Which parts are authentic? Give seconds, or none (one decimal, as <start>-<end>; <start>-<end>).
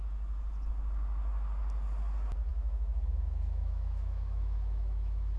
0.0-2.5